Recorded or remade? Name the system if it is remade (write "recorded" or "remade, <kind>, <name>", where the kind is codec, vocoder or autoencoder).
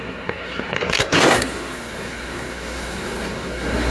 remade, codec, SNAC